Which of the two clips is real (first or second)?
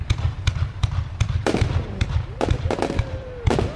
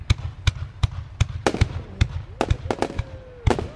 second